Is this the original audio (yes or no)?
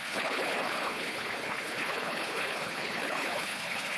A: no